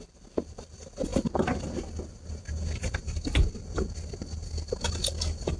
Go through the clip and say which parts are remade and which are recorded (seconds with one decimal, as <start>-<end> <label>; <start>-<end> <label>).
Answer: 0.0-5.6 recorded